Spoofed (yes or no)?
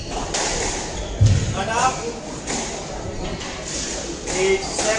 no